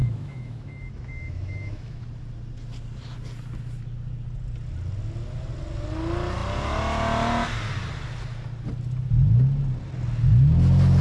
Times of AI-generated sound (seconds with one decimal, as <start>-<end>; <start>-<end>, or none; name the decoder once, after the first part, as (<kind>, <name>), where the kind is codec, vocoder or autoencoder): 0.0-2.0 (autoencoder, DAC-VAE)

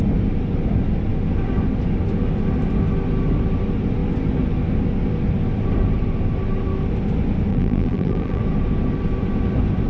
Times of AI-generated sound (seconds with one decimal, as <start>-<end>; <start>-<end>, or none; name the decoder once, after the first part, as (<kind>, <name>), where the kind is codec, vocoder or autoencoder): 7.5-8.4 (vocoder, BigVGAN v2)

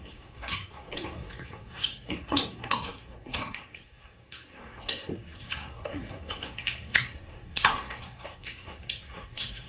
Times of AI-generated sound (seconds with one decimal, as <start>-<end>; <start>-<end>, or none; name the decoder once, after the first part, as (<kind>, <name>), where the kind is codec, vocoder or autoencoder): 0.0-9.7 (codec, SNAC)

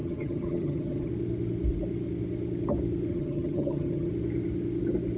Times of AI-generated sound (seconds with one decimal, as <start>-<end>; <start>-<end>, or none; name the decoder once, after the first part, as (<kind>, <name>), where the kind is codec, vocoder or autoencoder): 0.0-1.1 (vocoder, HiFi-GAN); 3.1-4.1

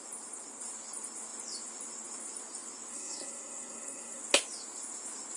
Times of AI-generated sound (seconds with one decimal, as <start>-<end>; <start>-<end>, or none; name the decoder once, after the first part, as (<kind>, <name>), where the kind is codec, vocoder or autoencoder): 2.9-4.2 (codec, SNAC)